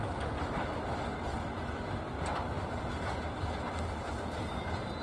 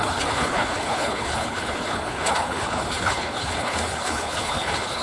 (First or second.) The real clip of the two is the first